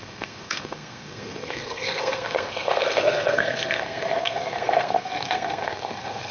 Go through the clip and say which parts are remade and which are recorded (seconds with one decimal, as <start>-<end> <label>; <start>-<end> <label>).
0.0-6.3 remade